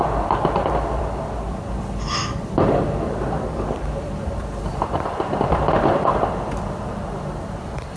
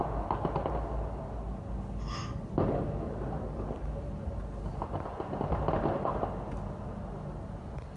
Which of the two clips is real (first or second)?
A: second